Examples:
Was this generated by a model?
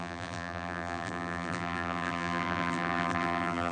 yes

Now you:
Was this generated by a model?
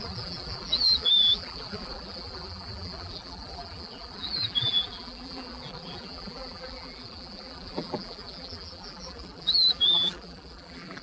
yes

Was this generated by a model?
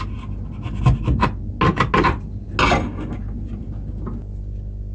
no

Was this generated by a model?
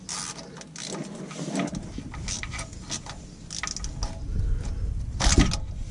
no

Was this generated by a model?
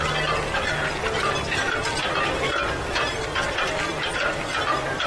no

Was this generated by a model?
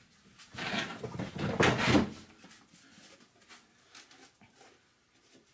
no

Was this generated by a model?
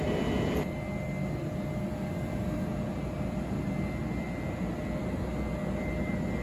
no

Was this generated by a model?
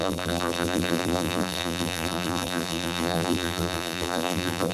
yes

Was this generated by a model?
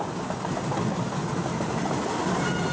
no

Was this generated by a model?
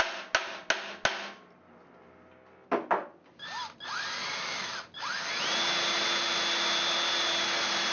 no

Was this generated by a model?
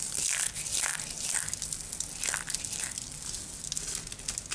no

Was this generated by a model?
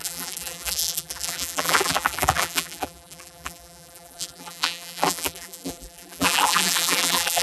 yes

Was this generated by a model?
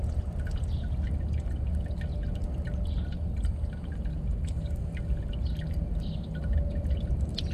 no